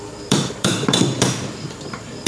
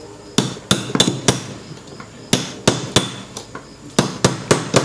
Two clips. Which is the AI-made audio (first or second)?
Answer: first